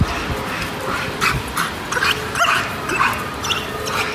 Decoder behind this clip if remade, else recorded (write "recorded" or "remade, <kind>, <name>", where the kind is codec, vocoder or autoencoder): recorded